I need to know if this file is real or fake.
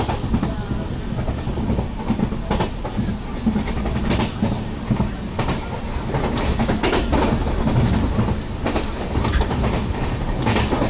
real